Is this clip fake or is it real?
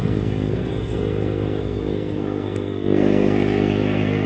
fake